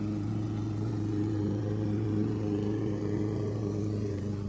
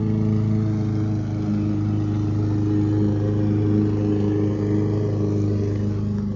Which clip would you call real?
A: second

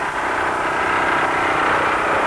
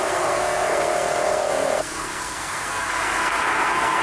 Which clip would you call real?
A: first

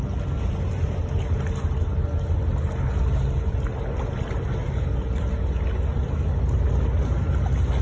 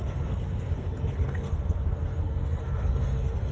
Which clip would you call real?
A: first